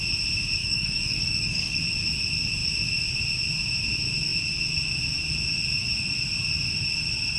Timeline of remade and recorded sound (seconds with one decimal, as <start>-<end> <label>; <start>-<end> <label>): 0.0-0.6 recorded; 0.6-1.8 remade; 1.8-7.4 recorded